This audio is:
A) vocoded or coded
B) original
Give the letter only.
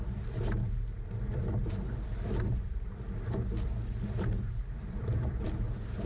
A